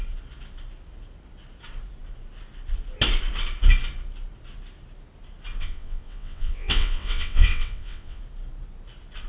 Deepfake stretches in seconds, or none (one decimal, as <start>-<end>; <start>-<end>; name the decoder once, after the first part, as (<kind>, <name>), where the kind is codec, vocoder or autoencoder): 5.6-8.2 (vocoder, WaveNeXt)